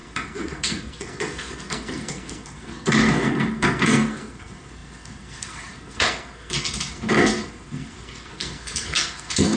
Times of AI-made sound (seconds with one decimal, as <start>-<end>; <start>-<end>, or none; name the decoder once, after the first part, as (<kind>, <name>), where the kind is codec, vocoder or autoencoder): 0.0-9.6 (codec, SNAC)